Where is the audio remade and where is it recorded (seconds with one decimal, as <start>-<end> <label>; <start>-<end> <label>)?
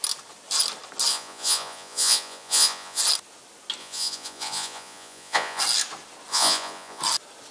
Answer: 0.0-1.1 recorded; 1.1-3.0 remade; 3.0-3.8 recorded; 3.8-5.6 remade; 5.6-6.3 recorded; 6.3-7.0 remade; 7.0-7.5 recorded